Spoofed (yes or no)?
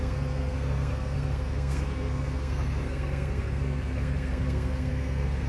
yes